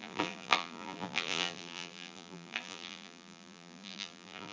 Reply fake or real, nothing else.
fake